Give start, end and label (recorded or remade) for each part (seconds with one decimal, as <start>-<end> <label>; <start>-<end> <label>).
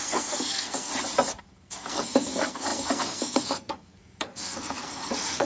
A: 0.0-0.9 remade; 0.9-1.4 recorded; 1.4-5.4 remade